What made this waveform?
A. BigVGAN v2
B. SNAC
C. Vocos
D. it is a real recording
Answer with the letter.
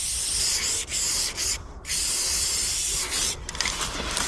D